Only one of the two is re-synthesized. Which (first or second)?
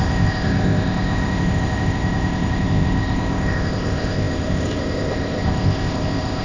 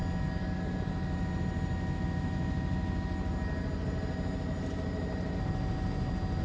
first